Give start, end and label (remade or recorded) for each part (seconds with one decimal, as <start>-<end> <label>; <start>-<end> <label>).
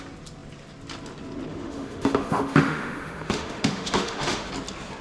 0.0-1.5 recorded; 1.5-4.5 remade; 4.5-5.0 recorded